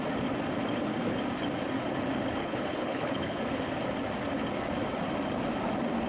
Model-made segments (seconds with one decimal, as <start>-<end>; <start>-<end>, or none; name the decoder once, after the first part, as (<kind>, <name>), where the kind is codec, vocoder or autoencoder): 2.4-3.4 (codec, HILCodec)